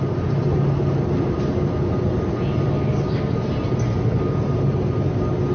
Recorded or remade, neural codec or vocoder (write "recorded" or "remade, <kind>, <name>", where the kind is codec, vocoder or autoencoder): recorded